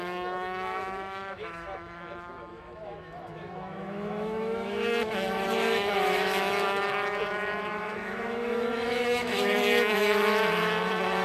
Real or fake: fake